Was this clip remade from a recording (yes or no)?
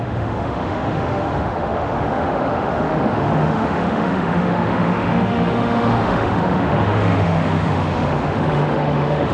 yes